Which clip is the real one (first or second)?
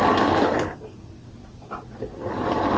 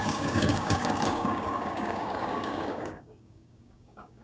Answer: first